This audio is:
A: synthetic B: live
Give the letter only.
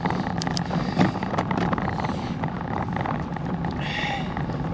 B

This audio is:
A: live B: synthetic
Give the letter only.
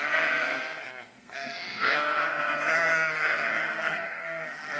B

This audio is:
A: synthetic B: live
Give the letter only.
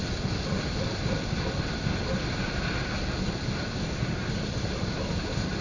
B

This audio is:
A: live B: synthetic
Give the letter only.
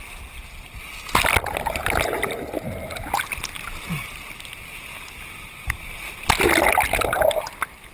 A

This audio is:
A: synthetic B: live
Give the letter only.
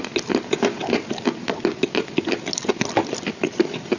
B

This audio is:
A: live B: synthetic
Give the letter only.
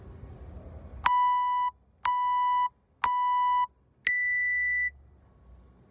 A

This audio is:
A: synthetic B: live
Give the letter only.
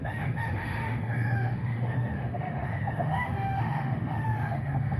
A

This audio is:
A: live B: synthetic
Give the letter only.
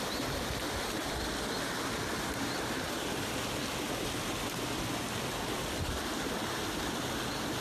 A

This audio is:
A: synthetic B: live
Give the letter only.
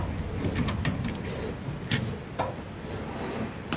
B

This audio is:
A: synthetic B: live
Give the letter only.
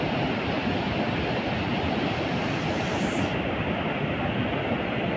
B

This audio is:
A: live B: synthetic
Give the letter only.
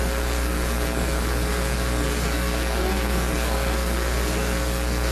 B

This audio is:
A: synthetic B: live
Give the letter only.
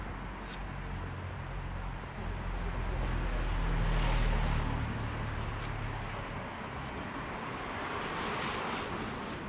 B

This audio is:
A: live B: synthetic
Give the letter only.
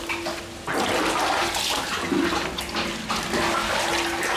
A